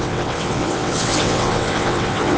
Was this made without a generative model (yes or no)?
no